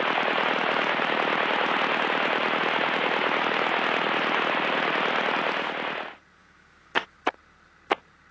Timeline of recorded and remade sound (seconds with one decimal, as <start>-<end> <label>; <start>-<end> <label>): 0.0-6.4 recorded; 6.4-7.2 remade; 7.2-8.3 recorded